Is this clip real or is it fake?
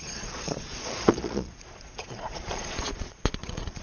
fake